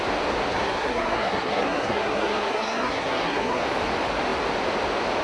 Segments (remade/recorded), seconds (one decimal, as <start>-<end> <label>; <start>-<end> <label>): 0.0-0.5 recorded; 0.5-3.6 remade; 3.6-5.2 recorded